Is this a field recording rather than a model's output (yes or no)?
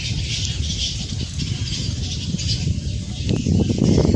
yes